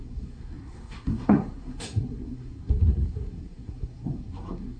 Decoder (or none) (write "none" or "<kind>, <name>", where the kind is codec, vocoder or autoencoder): codec, SNAC